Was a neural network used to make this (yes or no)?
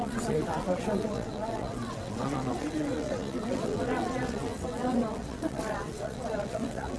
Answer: yes